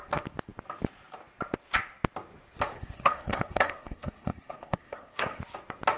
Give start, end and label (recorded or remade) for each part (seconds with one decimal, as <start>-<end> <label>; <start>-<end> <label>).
0.0-2.7 recorded; 2.7-5.4 remade; 5.4-6.0 recorded